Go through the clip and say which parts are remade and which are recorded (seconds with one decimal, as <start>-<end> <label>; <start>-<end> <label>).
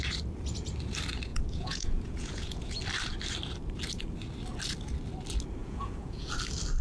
0.0-1.3 recorded; 1.3-2.8 remade; 2.8-5.6 recorded; 5.6-6.3 remade; 6.3-6.8 recorded